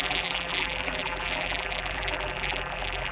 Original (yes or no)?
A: no